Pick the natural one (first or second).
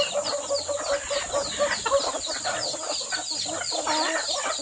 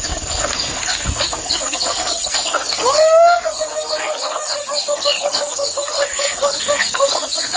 first